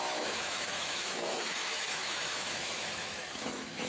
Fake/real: fake